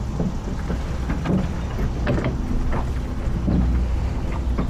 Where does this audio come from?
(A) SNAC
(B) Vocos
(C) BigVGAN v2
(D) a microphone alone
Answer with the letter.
D